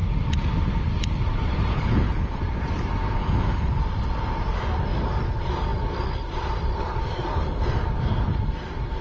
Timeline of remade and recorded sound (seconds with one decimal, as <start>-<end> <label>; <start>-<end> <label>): 0.0-1.7 recorded; 1.7-2.4 remade; 2.4-3.2 recorded; 3.2-3.8 remade; 3.8-9.0 recorded